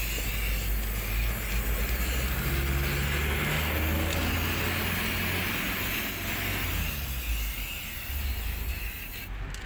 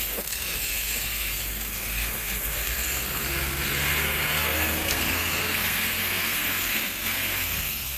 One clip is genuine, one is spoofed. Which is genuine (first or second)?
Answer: first